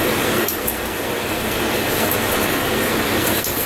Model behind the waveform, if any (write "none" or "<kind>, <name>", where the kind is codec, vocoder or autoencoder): codec, SNAC